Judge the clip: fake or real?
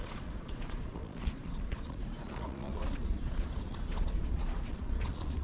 fake